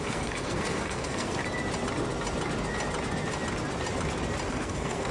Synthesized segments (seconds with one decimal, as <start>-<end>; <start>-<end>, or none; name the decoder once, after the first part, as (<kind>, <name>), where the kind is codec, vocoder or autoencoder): 0.0-1.4 (codec, SNAC); 4.5-5.1